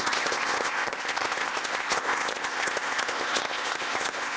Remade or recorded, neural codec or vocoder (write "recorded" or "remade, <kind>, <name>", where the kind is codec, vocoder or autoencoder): remade, codec, ZipCodec